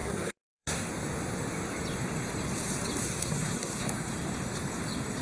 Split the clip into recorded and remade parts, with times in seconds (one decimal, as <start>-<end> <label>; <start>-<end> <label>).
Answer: 0.0-0.9 remade; 0.9-3.0 recorded; 3.0-4.1 remade; 4.1-5.2 recorded